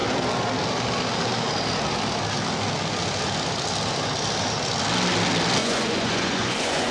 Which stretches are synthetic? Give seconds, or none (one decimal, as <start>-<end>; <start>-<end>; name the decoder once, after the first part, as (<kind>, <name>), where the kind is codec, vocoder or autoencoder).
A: 5.6-6.9 (vocoder, Vocos)